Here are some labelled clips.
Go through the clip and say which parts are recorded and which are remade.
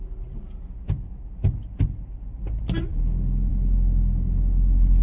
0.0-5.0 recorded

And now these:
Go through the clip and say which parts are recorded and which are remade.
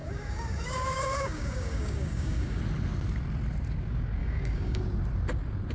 0.0-2.6 remade; 2.6-4.2 recorded; 4.2-4.8 remade; 4.8-5.7 recorded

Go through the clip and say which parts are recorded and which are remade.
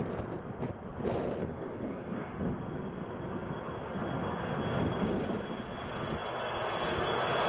0.0-1.4 recorded; 1.4-2.4 remade; 2.4-7.5 recorded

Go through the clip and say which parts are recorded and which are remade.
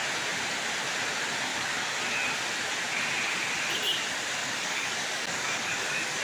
0.0-1.5 recorded; 1.5-2.0 remade; 2.0-4.4 recorded; 4.4-6.2 remade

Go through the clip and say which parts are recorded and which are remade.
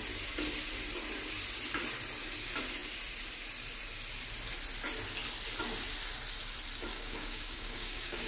0.0-6.9 recorded; 6.9-8.3 remade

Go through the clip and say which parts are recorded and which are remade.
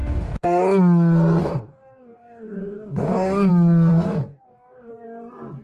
0.0-0.6 remade; 0.6-1.4 recorded; 1.4-3.5 remade; 3.5-3.9 recorded; 3.9-4.9 remade; 4.9-5.6 recorded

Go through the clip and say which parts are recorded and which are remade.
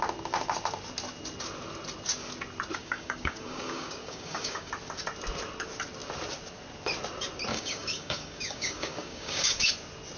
0.0-2.8 recorded; 2.8-4.7 remade; 4.7-7.5 recorded; 7.5-9.7 remade; 9.7-10.2 recorded